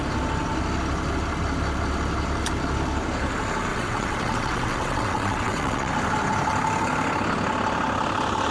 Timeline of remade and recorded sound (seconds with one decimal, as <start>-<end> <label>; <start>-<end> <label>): 0.0-3.7 recorded; 3.7-5.9 remade; 5.9-8.5 recorded